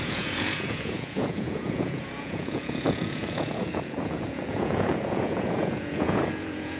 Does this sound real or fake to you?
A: fake